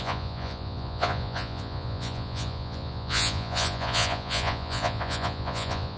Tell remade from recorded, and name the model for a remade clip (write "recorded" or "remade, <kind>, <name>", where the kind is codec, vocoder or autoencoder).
remade, vocoder, Vocos